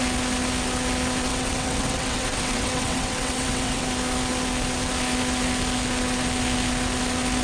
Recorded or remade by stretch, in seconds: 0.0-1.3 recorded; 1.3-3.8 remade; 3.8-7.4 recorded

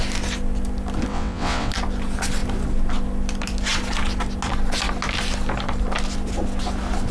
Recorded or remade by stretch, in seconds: 0.0-1.1 recorded; 1.1-1.7 remade; 1.7-7.1 recorded

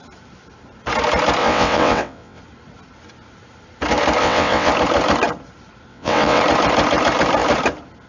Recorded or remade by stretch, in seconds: 0.0-1.4 recorded; 1.4-2.4 remade; 2.4-4.2 recorded; 4.2-4.7 remade; 4.7-5.9 recorded; 5.9-6.4 remade; 6.4-8.1 recorded

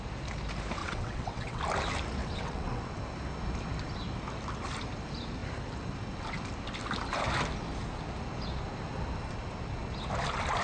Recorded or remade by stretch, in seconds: 0.0-0.8 recorded; 0.8-1.6 remade; 1.6-2.2 recorded; 2.2-2.8 remade; 2.8-10.6 recorded

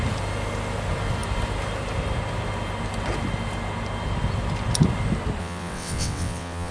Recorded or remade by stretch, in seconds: 0.0-5.4 recorded; 5.4-6.7 remade

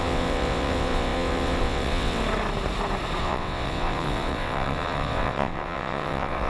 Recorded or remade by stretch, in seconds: 0.0-2.2 remade; 2.2-3.2 recorded; 3.2-6.5 remade